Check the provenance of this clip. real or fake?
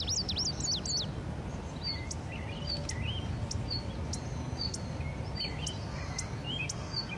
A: real